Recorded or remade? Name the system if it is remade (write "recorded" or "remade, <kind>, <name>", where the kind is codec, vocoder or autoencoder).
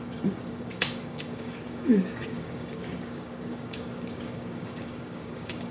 remade, codec, DAC